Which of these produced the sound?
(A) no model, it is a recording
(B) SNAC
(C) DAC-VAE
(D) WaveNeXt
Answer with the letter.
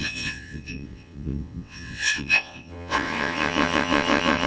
D